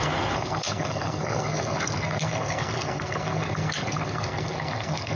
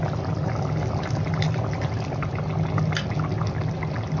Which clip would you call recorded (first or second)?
second